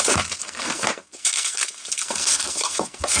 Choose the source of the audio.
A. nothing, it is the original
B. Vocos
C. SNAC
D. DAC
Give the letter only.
C